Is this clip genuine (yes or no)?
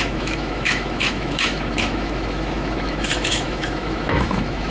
no